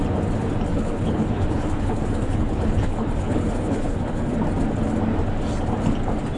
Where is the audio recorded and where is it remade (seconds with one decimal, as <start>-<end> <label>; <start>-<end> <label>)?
0.0-0.7 recorded; 0.7-4.3 remade; 4.3-6.4 recorded